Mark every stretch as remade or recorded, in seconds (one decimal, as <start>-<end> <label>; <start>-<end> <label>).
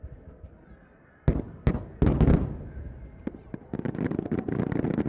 0.0-5.1 recorded